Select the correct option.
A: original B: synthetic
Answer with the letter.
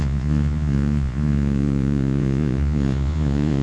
B